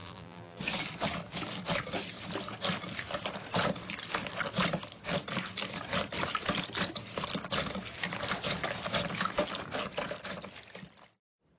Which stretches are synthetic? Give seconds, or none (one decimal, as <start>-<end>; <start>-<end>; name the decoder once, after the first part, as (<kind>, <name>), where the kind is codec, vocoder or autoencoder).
0.0-0.6 (vocoder, BigVGAN v2)